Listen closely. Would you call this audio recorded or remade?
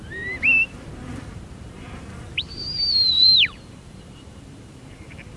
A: remade